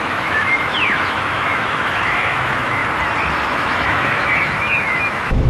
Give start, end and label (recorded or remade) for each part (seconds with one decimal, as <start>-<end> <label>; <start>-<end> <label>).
0.0-2.8 remade; 2.8-3.4 recorded; 3.4-5.5 remade